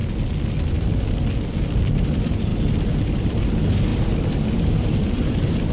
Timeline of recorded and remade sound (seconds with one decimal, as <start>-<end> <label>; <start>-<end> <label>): 0.0-1.8 recorded; 1.8-2.5 remade; 2.5-3.1 recorded; 3.1-5.7 remade